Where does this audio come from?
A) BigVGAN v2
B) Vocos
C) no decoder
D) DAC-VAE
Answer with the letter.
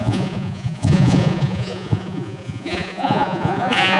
B